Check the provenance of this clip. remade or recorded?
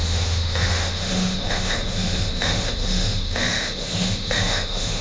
remade